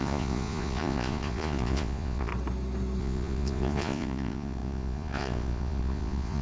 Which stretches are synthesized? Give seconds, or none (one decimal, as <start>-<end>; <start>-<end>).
0.0-2.3; 3.0-6.4